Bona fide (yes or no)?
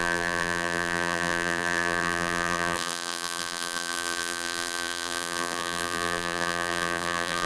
no